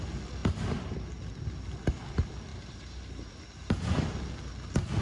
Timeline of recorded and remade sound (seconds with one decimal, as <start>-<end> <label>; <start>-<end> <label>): 0.0-2.5 recorded; 2.5-3.4 remade; 3.4-5.0 recorded